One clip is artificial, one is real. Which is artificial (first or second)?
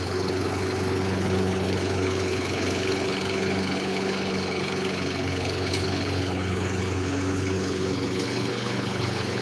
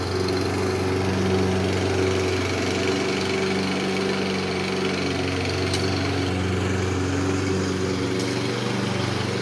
first